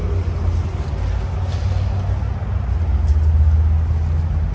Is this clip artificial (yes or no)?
no